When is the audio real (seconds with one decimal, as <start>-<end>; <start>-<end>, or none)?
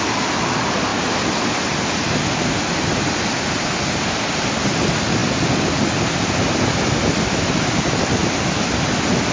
0.0-9.3